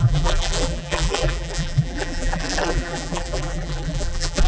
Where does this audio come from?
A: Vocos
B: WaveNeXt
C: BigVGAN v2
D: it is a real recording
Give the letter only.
C